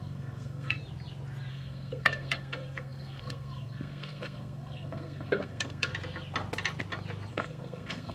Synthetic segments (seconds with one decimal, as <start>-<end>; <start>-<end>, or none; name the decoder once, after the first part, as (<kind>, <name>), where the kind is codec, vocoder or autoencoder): 0.0-0.8 (codec, SNAC); 1.5-5.9; 7.3-8.1